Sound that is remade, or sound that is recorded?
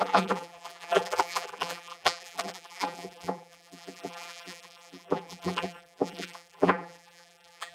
remade